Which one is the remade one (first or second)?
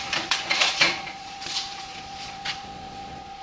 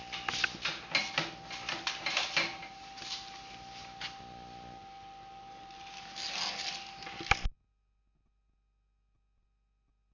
first